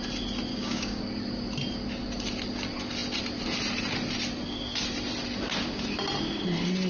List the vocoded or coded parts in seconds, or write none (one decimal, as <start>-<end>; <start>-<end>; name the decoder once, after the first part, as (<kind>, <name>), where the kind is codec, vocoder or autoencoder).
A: 0.5-1.0 (codec, DAC)